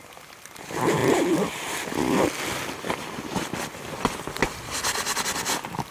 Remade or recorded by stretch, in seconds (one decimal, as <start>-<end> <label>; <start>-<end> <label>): 0.0-5.9 recorded